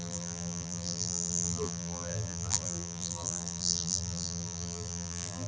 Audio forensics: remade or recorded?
remade